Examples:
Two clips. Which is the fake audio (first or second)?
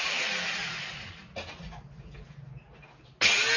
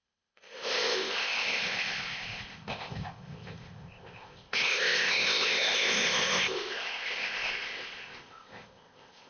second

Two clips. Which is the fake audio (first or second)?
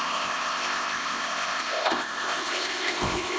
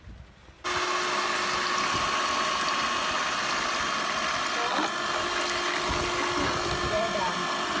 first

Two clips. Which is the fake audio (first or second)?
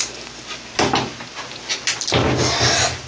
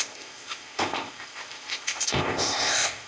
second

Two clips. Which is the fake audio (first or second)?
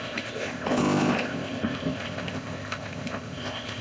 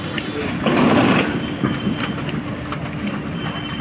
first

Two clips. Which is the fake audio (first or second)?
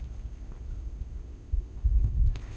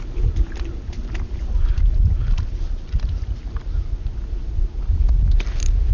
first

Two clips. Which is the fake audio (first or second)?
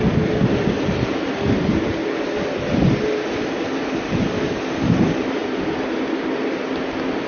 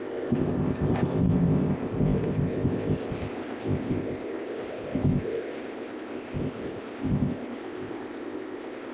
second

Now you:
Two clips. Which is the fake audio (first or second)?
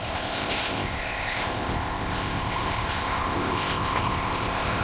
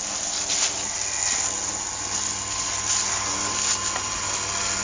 first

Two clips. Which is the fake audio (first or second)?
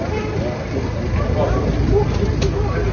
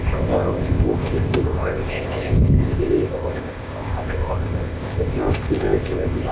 second